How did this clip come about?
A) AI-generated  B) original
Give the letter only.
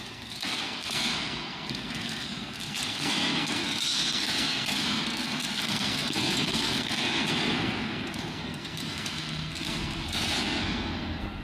A